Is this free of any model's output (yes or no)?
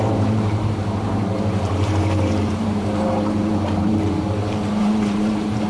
no